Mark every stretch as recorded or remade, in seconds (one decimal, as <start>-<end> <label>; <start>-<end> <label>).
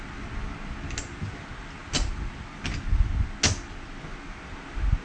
0.0-5.0 recorded